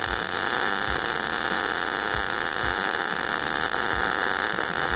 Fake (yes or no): yes